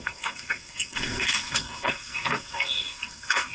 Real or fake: fake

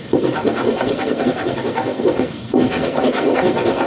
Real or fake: fake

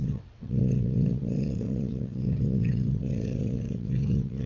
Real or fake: fake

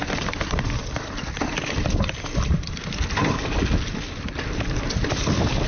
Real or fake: real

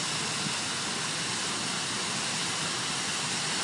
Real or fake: real